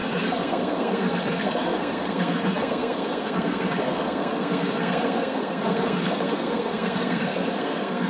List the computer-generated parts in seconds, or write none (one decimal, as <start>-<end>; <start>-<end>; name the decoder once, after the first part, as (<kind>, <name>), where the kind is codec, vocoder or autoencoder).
0.0-8.1 (codec, SNAC)